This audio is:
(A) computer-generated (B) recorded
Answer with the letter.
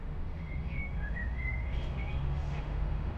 A